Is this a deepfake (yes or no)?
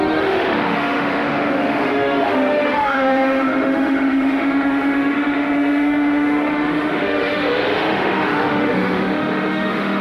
yes